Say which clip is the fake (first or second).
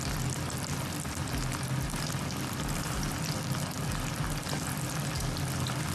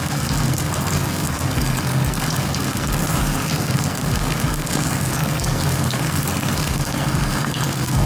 second